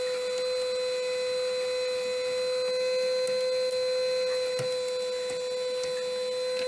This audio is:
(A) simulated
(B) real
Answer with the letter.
B